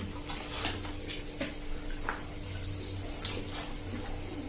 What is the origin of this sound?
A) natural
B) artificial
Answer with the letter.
A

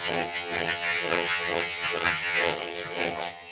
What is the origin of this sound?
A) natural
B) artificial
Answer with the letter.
B